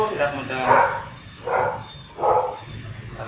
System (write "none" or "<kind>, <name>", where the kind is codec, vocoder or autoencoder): none